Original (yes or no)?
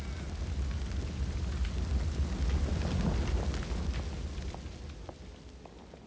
yes